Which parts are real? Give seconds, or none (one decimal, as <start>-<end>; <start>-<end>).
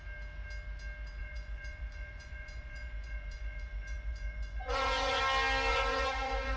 0.0-1.2; 5.2-5.7